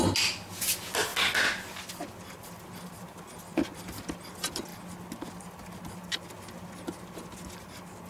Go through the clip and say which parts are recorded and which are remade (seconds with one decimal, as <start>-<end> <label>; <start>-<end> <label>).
0.0-3.7 recorded; 3.7-4.3 remade; 4.3-8.1 recorded